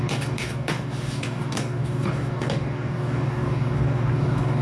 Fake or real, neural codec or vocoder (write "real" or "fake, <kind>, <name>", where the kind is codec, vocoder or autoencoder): fake, codec, DAC